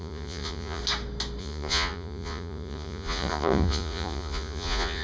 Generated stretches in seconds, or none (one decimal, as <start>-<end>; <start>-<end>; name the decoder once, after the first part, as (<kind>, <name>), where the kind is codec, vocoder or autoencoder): 0.0-0.8 (vocoder, Vocos); 1.4-5.0

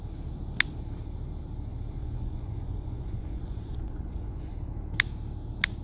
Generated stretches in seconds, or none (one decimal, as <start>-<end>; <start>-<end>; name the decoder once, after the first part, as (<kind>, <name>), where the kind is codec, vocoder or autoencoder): 2.0-4.5 (vocoder, Vocos)

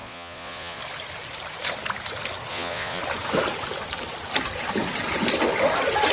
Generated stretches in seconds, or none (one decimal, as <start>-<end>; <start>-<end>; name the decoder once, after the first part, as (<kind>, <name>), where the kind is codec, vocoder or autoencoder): 0.0-0.8 (vocoder, Vocos); 2.5-3.0

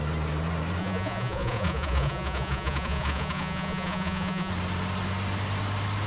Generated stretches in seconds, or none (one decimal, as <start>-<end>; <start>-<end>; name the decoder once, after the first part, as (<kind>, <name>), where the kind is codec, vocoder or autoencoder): 0.8-4.5 (vocoder, Vocos)